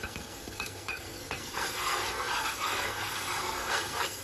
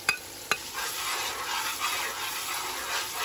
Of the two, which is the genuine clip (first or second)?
second